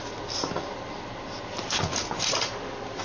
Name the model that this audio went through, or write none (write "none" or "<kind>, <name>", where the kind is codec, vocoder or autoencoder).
none